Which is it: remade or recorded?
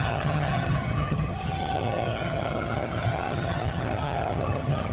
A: remade